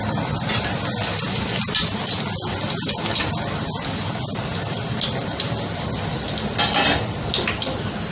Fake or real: real